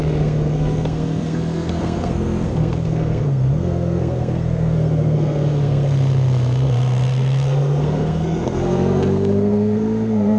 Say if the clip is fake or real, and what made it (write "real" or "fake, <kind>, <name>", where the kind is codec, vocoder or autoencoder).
fake, codec, SNAC